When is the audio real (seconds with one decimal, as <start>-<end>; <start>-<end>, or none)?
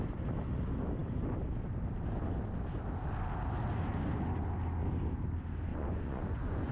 0.0-5.7